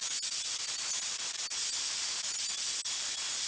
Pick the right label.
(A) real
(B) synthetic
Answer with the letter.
A